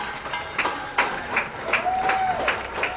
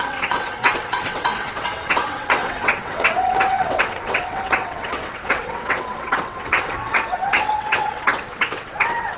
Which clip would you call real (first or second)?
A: first